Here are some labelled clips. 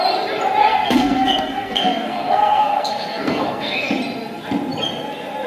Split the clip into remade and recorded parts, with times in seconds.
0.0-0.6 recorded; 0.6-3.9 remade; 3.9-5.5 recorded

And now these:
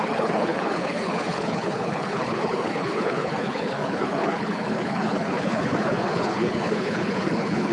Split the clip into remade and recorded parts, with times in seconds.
0.0-7.7 remade

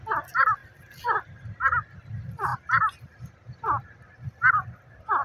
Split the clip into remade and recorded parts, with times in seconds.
0.0-5.2 recorded

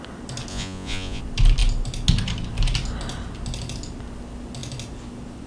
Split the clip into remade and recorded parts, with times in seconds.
0.0-0.5 recorded; 0.5-1.2 remade; 1.2-5.5 recorded

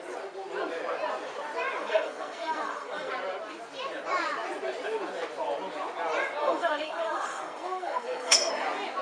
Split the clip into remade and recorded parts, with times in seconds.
0.0-1.8 recorded; 1.8-3.1 remade; 3.1-6.4 recorded; 6.4-8.5 remade; 8.5-9.0 recorded

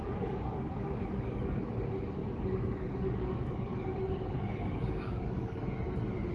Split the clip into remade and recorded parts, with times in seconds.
0.0-6.3 remade

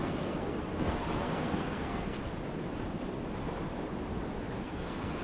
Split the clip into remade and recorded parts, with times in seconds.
0.0-2.2 remade; 2.2-4.6 recorded; 4.6-5.2 remade

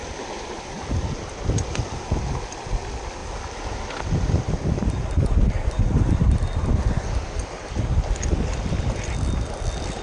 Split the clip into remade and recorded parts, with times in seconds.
0.0-10.0 recorded